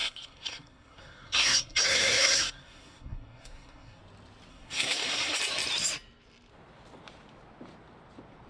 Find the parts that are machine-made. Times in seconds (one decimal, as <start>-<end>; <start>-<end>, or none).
0.0-4.0; 4.5-5.4